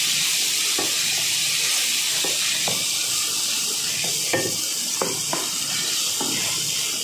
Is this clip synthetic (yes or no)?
no